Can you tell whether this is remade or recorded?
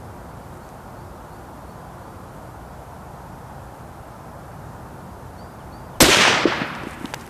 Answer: recorded